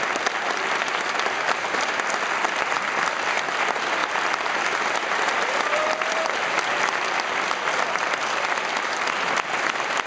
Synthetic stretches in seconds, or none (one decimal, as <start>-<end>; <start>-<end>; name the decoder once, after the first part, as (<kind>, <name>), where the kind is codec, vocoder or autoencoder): 4.0-6.8 (vocoder, BigVGAN v2)